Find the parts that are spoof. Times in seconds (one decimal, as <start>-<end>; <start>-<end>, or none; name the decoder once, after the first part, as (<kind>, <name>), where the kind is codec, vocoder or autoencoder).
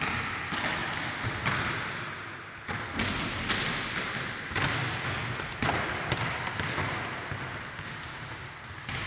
none